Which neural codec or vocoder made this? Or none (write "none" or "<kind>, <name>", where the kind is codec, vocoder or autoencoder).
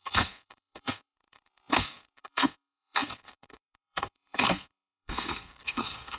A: codec, SNAC